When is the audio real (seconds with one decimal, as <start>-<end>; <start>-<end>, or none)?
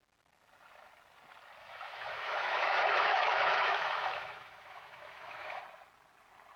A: 0.0-1.6; 5.6-6.6